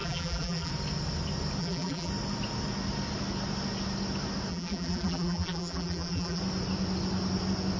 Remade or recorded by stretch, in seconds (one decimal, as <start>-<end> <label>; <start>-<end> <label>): 0.0-0.7 remade; 0.7-1.6 recorded; 1.6-2.1 remade; 2.1-4.5 recorded; 4.5-6.4 remade; 6.4-7.8 recorded

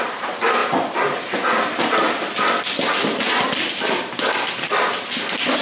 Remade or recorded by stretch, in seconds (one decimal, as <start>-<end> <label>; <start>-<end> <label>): 0.0-0.6 remade; 0.6-3.3 recorded; 3.3-5.6 remade

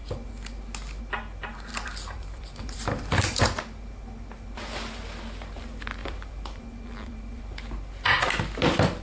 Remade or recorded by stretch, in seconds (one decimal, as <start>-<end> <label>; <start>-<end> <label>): 0.0-1.7 recorded; 1.7-3.4 remade; 3.4-6.0 recorded; 6.0-7.4 remade; 7.4-9.0 recorded

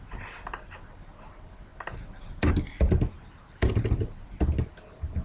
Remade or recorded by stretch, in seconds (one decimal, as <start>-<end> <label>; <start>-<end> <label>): 0.0-5.2 recorded

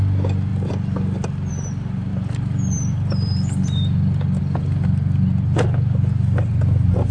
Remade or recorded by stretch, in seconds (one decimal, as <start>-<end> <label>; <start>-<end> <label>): 0.0-0.5 recorded; 0.5-1.5 remade; 1.5-2.1 recorded; 2.1-4.4 remade; 4.4-7.1 recorded